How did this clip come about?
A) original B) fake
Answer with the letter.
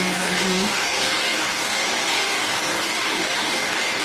B